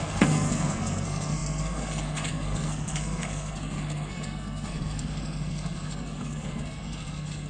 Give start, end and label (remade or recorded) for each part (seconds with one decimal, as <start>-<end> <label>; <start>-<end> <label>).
0.0-7.5 remade